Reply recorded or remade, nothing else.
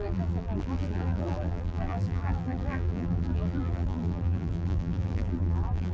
remade